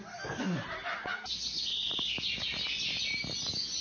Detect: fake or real real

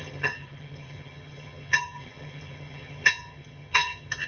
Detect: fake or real fake